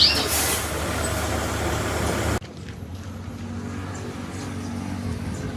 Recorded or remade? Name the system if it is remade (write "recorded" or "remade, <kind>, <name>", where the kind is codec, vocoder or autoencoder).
recorded